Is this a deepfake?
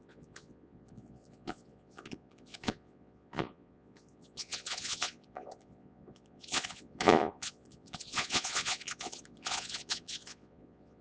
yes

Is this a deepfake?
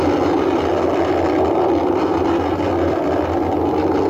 no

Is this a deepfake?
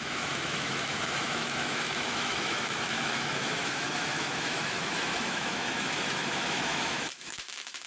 yes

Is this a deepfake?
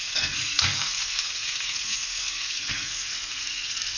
yes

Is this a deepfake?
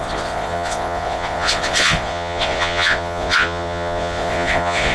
yes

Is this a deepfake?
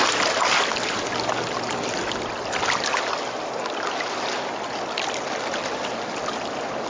no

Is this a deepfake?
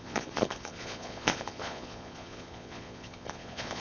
yes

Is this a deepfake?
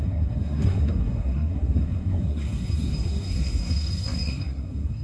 yes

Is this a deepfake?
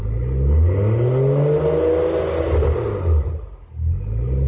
no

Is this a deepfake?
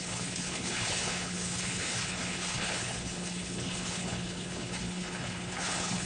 yes